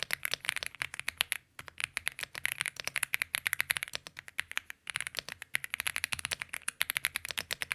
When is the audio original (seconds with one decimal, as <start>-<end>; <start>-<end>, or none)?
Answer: 0.0-7.7